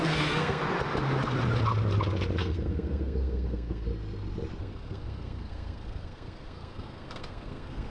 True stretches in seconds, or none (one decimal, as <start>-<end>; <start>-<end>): 0.6-2.4; 3.9-4.6